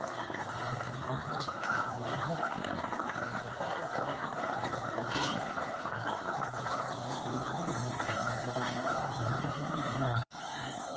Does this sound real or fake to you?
fake